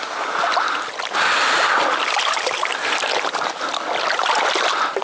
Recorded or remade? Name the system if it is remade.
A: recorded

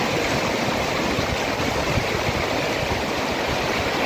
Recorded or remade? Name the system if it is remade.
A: recorded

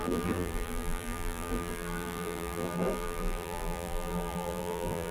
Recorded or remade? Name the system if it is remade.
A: remade, vocoder, BigVGAN v2